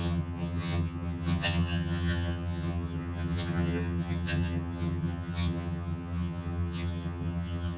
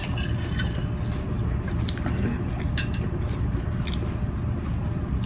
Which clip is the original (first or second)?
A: second